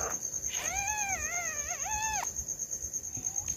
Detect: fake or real real